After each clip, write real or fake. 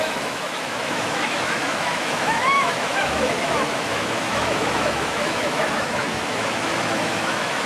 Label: fake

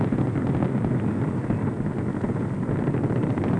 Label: real